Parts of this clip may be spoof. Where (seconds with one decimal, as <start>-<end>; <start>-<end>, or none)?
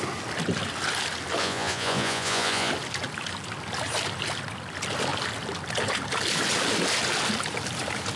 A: 1.4-2.7